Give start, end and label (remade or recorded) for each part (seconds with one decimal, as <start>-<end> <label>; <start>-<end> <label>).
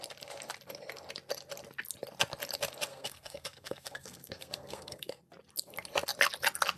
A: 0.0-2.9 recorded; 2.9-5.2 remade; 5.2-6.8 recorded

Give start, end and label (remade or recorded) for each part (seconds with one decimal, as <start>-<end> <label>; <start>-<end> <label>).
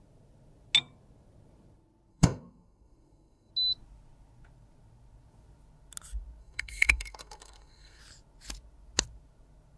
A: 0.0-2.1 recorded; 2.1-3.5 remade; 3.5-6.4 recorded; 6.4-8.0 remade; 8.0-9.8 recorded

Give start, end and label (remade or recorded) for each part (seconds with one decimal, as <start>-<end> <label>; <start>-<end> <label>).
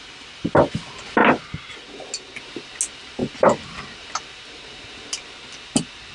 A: 0.0-6.1 recorded